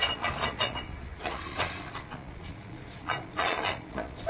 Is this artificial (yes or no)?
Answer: yes